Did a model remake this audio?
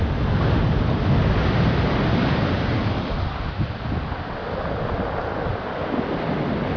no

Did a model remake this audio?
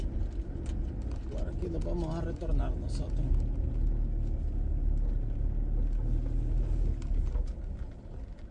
no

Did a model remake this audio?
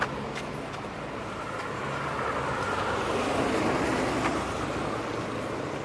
no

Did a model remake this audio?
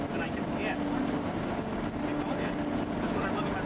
no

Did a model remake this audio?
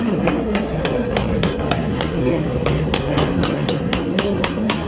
yes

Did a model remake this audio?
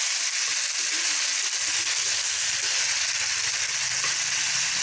no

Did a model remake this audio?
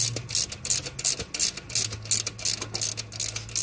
no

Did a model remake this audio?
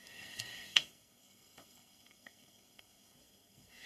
yes